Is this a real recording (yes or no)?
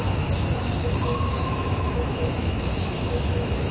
no